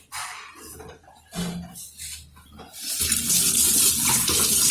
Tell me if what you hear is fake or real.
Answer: real